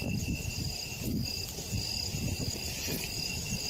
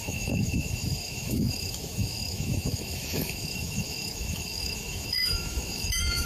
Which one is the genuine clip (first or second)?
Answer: first